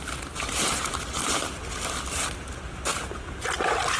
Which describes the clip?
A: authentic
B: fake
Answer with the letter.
B